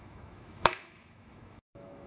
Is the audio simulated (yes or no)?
yes